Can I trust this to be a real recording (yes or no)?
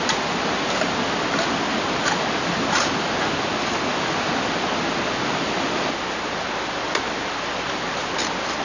yes